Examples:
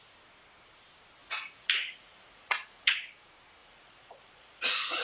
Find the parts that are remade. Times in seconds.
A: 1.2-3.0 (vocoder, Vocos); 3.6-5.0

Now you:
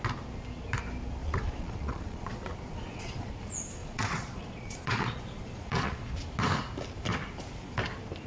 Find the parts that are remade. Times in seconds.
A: 1.2-3.3 (vocoder, Vocos); 3.8-6.1

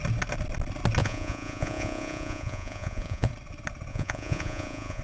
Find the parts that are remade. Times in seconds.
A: 1.0-3.3 (vocoder, Vocos); 3.9-5.0

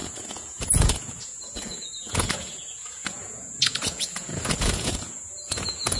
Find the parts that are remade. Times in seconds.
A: 0.0-6.0 (vocoder, Vocos)

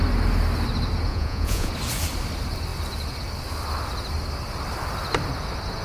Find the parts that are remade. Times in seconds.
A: 1.1-1.7 (vocoder, Vocos)

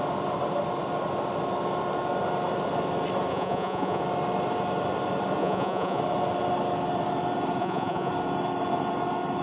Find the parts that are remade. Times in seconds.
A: 3.3-4.0 (vocoder, Vocos); 5.4-6.0; 7.6-8.1